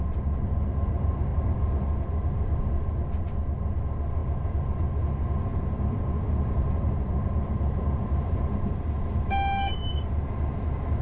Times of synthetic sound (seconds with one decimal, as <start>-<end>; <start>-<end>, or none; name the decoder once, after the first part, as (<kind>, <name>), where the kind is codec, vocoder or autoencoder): 1.3-2.7 (vocoder, BigVGAN v2); 4.2-5.0; 5.5-9.2